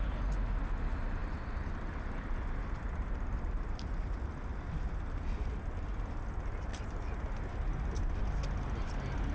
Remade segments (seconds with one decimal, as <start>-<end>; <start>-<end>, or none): 2.6-4.7; 6.7-8.2